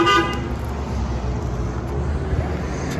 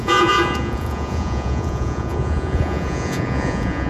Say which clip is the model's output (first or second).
second